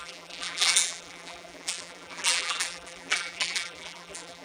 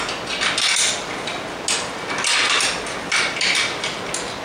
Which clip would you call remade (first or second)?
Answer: first